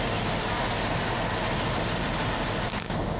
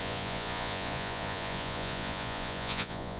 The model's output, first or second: second